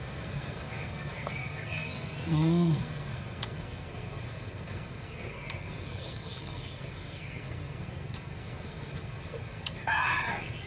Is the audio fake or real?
fake